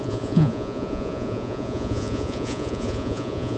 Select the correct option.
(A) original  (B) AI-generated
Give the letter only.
B